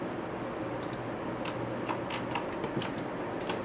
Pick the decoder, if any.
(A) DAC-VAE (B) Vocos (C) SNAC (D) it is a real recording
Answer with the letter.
D